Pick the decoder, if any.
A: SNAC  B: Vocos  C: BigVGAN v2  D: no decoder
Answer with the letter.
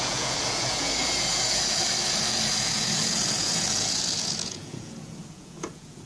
B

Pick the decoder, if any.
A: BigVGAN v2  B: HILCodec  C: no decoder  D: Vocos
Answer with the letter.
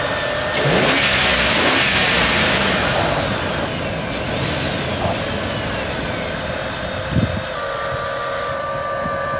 C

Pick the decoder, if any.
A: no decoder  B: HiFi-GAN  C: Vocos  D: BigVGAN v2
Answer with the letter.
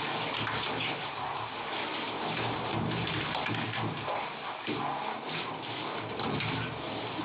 A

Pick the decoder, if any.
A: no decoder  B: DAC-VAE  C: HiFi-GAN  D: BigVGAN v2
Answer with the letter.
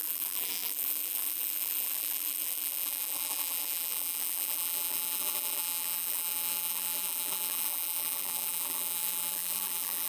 D